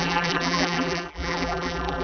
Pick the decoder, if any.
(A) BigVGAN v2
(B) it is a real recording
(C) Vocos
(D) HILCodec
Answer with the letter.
A